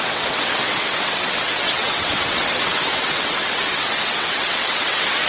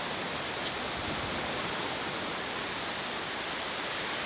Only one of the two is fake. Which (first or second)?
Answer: first